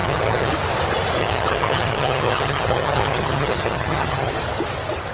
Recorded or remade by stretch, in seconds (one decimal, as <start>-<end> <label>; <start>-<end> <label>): 0.0-0.5 remade; 0.5-1.2 recorded; 1.2-4.3 remade; 4.3-5.1 recorded